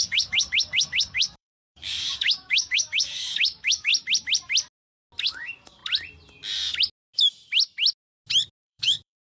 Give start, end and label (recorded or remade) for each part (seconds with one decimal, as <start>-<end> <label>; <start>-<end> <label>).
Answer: 0.0-3.9 remade; 3.9-5.2 recorded; 5.2-5.8 remade; 5.8-8.6 recorded; 8.6-9.3 remade